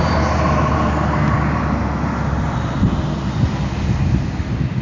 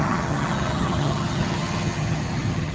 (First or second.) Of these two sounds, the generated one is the second